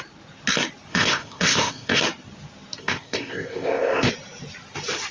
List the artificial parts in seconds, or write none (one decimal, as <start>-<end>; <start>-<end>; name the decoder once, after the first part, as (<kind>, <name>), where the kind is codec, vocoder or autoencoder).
0.9-2.0 (codec, ZipCodec); 2.8-4.1